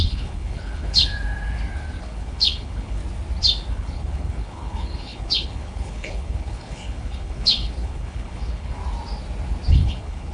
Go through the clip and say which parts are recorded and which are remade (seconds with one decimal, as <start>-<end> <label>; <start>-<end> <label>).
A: 0.0-1.1 remade; 1.1-2.0 recorded; 2.0-3.0 remade; 3.0-3.7 recorded; 3.7-8.8 remade; 8.8-9.7 recorded; 9.7-10.3 remade